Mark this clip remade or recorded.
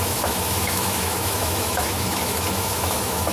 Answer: remade